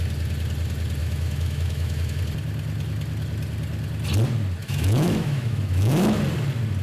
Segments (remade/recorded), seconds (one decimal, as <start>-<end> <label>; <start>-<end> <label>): 0.0-1.0 recorded; 1.0-2.2 remade; 2.2-4.6 recorded; 4.6-6.2 remade; 6.2-6.8 recorded